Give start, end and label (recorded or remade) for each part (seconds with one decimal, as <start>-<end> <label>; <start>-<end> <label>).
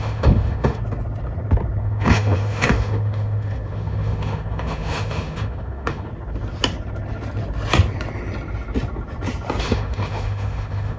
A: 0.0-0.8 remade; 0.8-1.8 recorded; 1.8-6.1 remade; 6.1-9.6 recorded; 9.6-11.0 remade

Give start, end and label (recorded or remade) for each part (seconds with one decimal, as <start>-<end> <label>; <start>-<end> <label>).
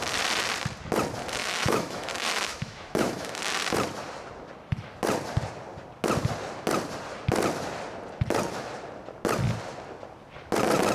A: 0.0-1.4 recorded; 1.4-3.4 remade; 3.4-10.9 recorded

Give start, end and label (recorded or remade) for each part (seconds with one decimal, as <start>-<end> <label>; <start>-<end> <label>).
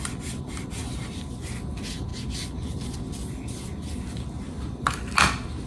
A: 0.0-5.7 recorded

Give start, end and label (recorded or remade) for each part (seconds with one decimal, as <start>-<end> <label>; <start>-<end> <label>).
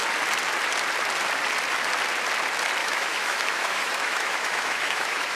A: 0.0-2.8 recorded; 2.8-5.4 remade